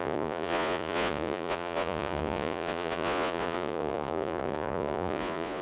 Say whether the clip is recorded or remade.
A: remade